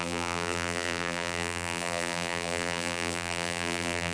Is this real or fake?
fake